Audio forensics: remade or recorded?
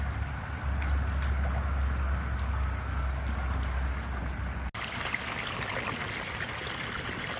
recorded